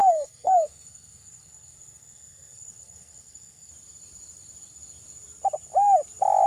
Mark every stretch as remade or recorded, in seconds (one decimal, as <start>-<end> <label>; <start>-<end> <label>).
0.0-3.7 remade; 3.7-6.5 recorded